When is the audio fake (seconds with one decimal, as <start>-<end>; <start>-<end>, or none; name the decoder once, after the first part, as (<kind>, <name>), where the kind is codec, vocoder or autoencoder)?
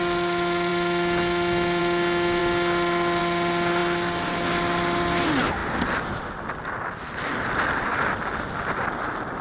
none